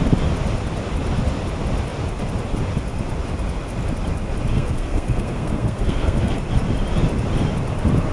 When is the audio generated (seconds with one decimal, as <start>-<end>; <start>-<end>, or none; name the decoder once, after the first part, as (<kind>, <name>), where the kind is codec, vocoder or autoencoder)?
4.5-6.4 (codec, SNAC)